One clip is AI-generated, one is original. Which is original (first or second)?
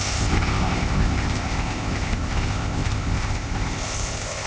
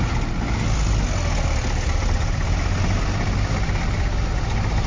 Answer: second